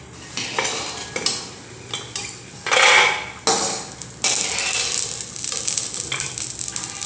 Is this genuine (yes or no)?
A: yes